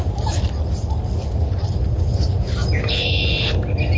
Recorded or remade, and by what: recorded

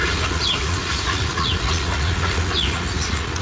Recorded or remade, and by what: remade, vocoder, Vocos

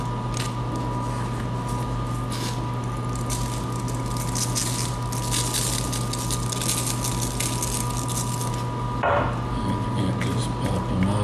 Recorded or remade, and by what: recorded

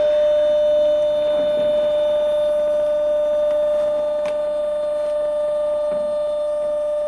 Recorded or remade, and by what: recorded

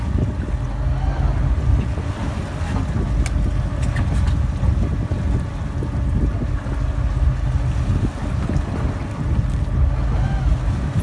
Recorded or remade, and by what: recorded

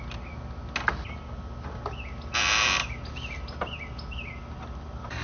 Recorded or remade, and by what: recorded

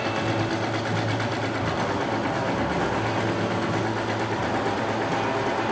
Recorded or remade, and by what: recorded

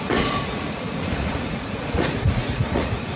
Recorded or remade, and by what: remade, vocoder, Vocos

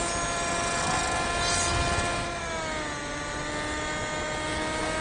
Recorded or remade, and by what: recorded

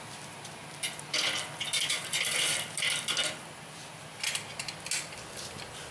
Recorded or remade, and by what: recorded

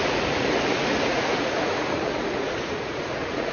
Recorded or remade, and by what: remade, vocoder, Vocos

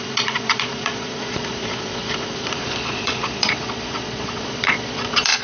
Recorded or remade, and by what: remade, vocoder, Vocos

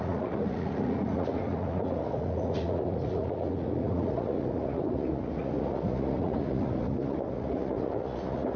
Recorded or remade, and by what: remade, vocoder, Vocos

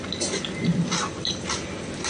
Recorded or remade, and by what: recorded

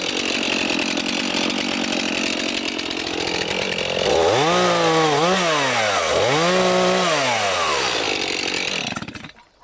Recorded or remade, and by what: recorded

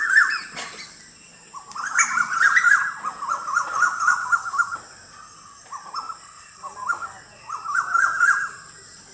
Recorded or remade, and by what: recorded